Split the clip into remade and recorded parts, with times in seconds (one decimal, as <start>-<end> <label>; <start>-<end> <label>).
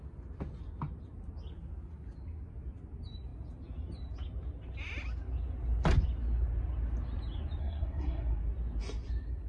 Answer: 0.0-7.6 recorded; 7.6-8.4 remade; 8.4-9.5 recorded